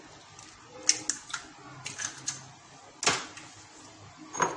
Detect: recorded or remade recorded